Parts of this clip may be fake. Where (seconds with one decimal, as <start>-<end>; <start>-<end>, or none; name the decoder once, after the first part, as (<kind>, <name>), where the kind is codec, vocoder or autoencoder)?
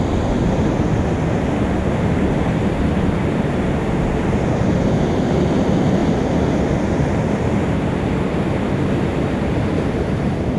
none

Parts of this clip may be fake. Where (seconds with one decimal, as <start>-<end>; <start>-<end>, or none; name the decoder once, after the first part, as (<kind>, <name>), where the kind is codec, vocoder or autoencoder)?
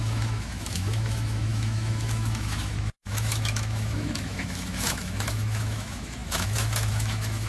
0.0-7.5 (autoencoder, DAC-VAE)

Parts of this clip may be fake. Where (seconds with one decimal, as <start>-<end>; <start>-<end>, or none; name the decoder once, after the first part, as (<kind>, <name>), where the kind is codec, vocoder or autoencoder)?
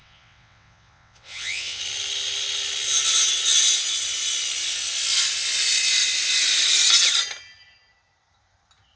0.0-1.8 (vocoder, WaveNeXt)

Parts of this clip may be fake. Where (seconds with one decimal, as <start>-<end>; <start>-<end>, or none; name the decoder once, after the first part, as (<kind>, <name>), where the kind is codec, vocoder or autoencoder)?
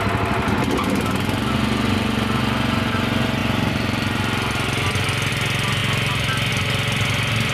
none